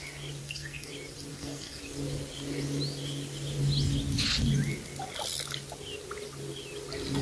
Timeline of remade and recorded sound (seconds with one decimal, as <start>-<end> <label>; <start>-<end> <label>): 0.0-0.4 recorded; 0.4-0.9 remade; 0.9-1.3 recorded; 1.3-1.8 remade; 1.8-7.2 recorded